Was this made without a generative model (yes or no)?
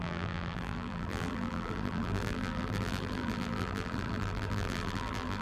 no